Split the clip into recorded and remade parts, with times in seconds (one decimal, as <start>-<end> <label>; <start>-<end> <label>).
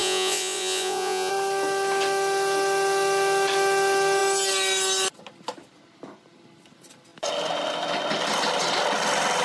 0.0-1.3 remade; 1.3-9.4 recorded